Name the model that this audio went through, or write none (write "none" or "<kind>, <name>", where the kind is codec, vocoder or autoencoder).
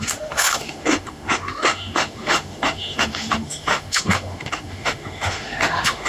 autoencoder, DAC-VAE